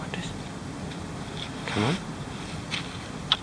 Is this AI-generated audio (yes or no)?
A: no